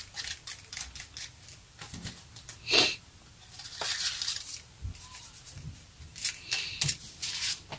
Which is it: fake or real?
real